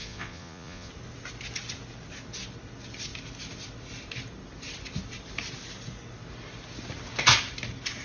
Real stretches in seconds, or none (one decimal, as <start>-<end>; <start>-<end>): 0.9-8.0